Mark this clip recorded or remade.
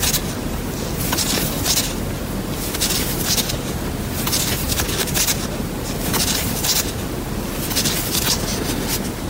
recorded